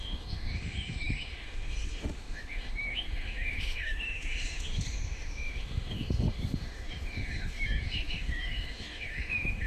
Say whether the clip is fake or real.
fake